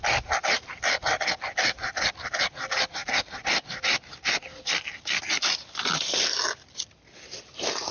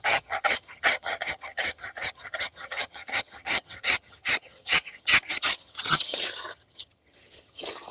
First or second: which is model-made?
second